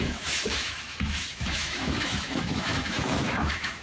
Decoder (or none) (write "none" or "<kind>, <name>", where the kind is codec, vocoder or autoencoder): autoencoder, DAC-VAE